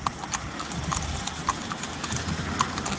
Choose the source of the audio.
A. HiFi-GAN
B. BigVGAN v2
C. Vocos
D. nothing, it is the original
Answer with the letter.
D